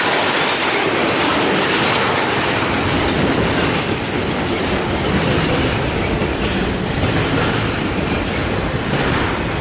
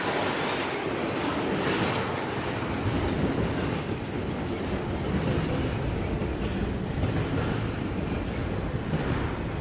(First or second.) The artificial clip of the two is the first